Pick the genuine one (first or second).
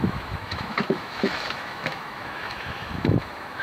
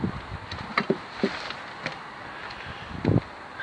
second